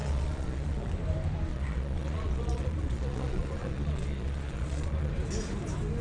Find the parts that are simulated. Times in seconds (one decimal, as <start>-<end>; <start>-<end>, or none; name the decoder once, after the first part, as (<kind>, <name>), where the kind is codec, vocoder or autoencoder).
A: 0.0-0.9 (vocoder, Vocos); 1.5-5.1